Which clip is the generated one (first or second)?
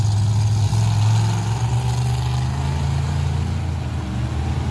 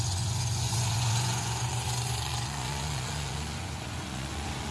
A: second